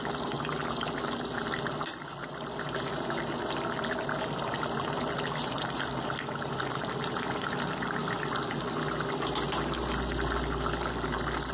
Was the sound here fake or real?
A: real